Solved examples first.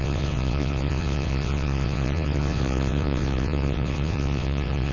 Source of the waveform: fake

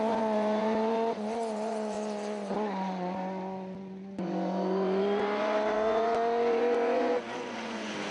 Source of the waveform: fake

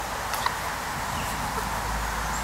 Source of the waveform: real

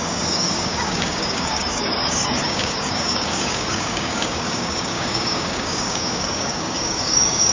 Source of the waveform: fake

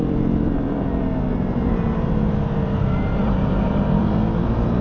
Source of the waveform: fake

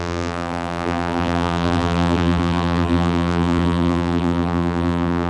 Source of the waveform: fake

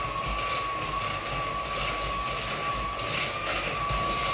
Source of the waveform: real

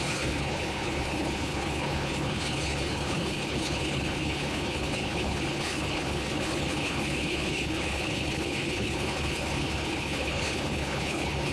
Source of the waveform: fake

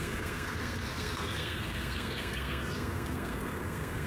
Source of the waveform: fake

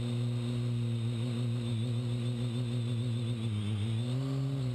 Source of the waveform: real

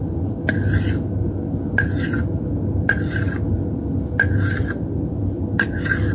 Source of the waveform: real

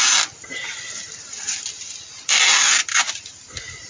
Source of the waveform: real